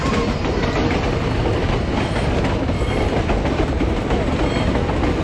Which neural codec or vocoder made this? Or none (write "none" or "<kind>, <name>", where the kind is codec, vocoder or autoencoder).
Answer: none